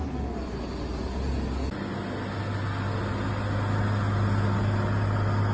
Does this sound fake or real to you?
real